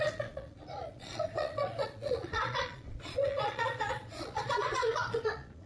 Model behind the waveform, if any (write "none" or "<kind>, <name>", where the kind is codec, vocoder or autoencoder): vocoder, Vocos